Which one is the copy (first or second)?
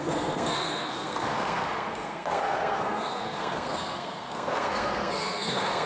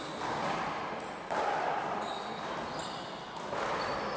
first